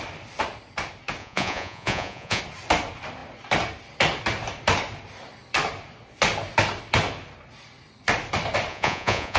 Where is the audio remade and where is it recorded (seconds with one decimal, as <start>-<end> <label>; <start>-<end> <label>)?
0.0-1.2 recorded; 1.2-2.4 remade; 2.4-8.7 recorded; 8.7-9.4 remade